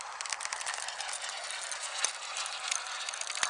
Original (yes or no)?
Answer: yes